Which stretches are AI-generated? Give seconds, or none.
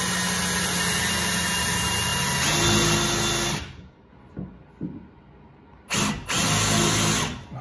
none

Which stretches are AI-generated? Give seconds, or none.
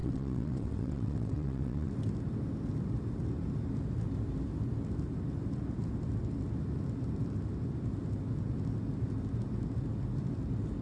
0.0-1.9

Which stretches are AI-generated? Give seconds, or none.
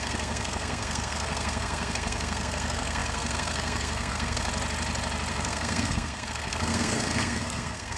0.0-4.5; 5.3-8.0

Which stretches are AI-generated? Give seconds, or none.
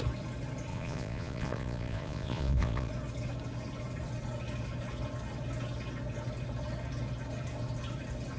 0.7-2.9